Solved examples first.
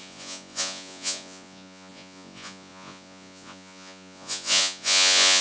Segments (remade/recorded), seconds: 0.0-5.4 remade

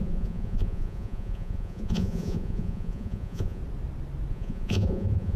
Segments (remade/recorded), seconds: 0.0-3.6 remade; 3.6-4.3 recorded; 4.3-5.4 remade

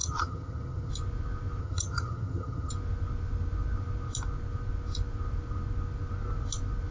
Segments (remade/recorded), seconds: 0.0-0.9 remade; 0.9-1.6 recorded; 1.6-2.7 remade; 2.7-6.9 recorded

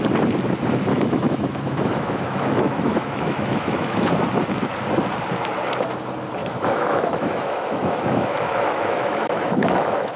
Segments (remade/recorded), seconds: 0.0-0.9 recorded; 0.9-4.1 remade; 4.1-6.4 recorded; 6.4-10.2 remade

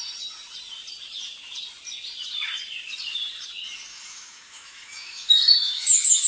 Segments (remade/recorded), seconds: 0.0-3.9 recorded; 3.9-6.3 remade

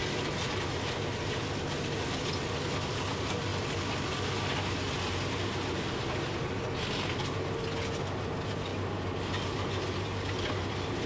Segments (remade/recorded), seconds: 0.0-11.1 recorded